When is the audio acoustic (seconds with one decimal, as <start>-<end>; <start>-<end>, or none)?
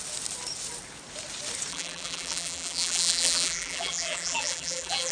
0.0-1.7